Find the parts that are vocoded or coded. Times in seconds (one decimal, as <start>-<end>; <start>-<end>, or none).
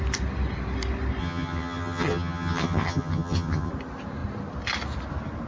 1.2-3.7